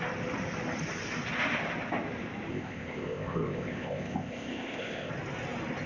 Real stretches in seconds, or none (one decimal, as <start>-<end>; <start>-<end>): 0.0-2.5; 5.1-5.9